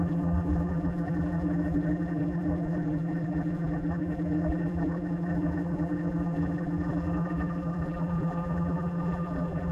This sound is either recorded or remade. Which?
remade